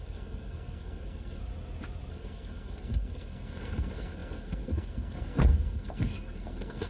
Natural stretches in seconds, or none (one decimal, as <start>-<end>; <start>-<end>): 1.4-2.1